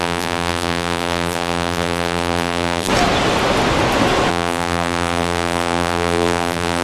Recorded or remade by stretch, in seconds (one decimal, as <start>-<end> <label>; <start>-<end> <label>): 0.0-2.9 remade; 2.9-4.3 recorded; 4.3-6.8 remade